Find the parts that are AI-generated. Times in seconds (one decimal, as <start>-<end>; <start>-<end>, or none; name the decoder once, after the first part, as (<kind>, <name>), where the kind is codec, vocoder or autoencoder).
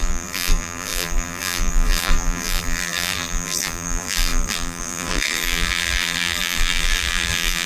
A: 0.0-7.7 (vocoder, BigVGAN v2)